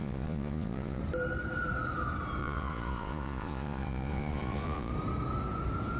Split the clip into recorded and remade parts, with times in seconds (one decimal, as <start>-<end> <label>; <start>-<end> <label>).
0.0-1.0 remade; 1.0-2.4 recorded; 2.4-4.9 remade; 4.9-6.0 recorded